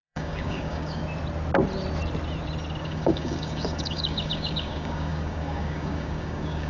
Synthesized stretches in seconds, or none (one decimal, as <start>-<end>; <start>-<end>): 0.0-1.0; 2.8-6.7